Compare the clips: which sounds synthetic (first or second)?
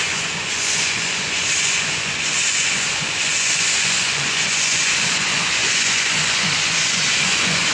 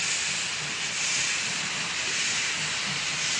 first